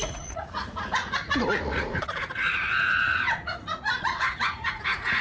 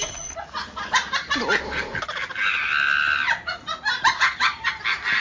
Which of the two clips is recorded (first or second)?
second